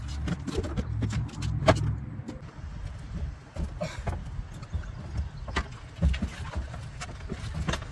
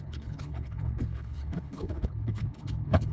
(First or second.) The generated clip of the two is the second